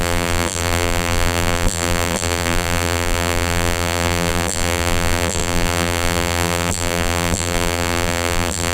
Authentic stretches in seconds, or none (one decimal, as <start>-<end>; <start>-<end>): none